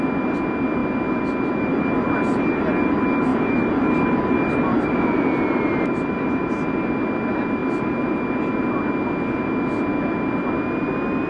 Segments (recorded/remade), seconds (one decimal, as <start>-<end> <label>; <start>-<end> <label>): 0.0-3.3 recorded; 3.3-6.5 remade; 6.5-7.6 recorded; 7.6-8.2 remade; 8.2-11.3 recorded